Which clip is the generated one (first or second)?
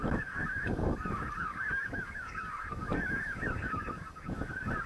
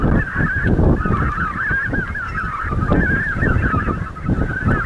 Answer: first